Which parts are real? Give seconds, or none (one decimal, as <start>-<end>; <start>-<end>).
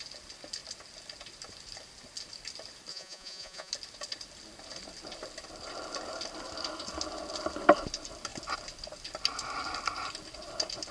0.0-2.9; 3.7-10.9